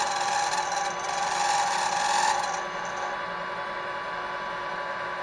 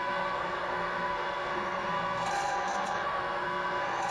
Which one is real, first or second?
first